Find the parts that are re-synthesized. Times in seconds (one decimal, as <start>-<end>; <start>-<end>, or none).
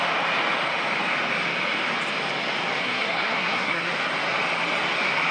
2.8-3.9